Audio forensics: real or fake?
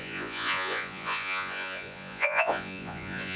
fake